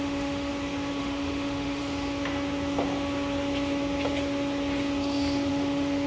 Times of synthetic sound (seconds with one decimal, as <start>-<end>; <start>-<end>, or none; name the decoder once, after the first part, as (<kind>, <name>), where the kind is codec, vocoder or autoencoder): 0.0-0.5 (autoencoder, DAC-VAE); 1.0-1.8; 5.5-6.1